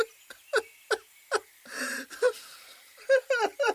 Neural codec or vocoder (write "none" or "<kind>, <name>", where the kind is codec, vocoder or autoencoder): vocoder, BigVGAN v2